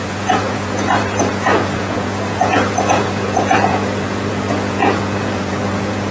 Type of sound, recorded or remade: remade